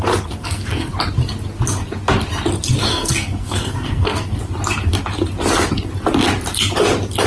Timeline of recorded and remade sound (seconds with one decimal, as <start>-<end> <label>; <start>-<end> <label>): 0.0-0.4 recorded; 0.4-0.9 remade; 0.9-2.9 recorded; 2.9-4.4 remade; 4.4-7.3 recorded